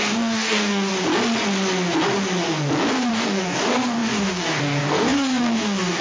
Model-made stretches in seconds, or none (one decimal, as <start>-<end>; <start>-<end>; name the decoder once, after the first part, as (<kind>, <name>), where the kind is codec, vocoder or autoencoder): 0.0-0.9 (codec, DAC); 3.1-6.0